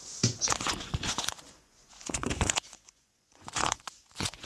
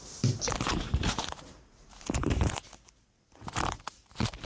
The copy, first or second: first